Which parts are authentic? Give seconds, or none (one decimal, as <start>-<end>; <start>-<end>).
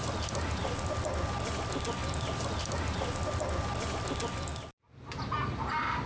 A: 0.0-6.1